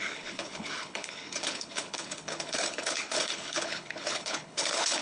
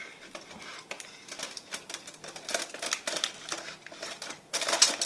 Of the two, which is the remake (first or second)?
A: first